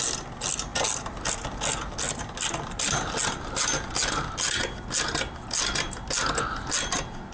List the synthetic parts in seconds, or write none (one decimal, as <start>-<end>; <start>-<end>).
none